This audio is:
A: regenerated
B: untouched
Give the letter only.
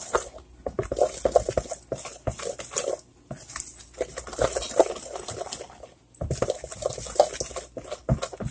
B